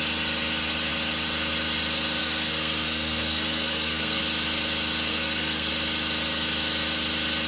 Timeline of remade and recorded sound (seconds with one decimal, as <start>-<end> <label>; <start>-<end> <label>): 0.0-2.2 recorded; 2.2-4.2 remade; 4.2-5.1 recorded; 5.1-5.7 remade; 5.7-7.5 recorded